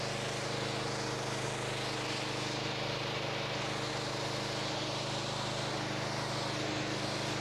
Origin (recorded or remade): recorded